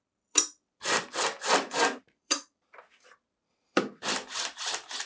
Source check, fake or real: fake